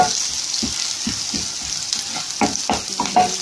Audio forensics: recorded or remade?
recorded